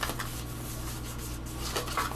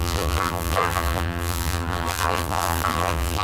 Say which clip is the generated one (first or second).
second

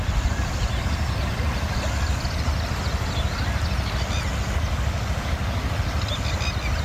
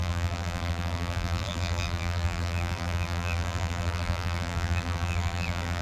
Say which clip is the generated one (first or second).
second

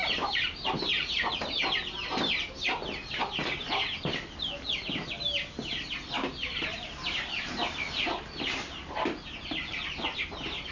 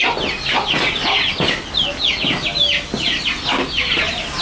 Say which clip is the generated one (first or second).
first